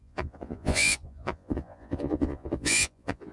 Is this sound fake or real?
fake